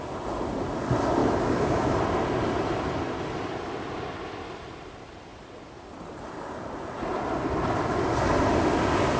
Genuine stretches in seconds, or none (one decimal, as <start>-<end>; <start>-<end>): 0.0-1.2; 1.9-9.2